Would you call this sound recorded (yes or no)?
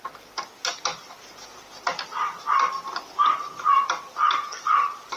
yes